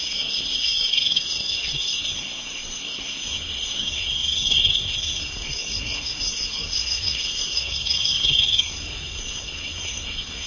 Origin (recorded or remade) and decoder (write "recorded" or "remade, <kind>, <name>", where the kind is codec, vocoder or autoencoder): remade, codec, SNAC